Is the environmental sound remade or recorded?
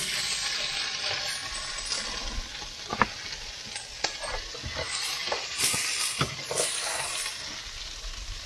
recorded